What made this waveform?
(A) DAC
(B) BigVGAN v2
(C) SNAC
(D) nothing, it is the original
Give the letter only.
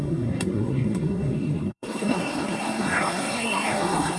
C